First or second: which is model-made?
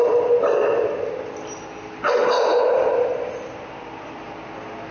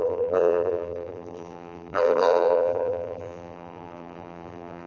second